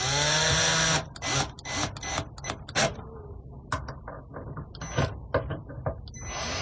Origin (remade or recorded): recorded